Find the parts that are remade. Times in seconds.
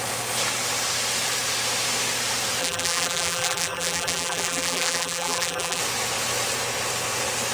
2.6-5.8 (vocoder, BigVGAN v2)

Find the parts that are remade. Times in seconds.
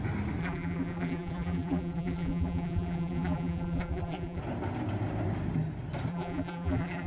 0.4-4.4 (vocoder, BigVGAN v2); 6.1-7.1